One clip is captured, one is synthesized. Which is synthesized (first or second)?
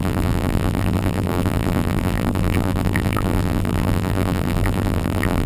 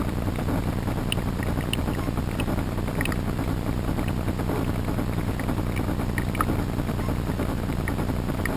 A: first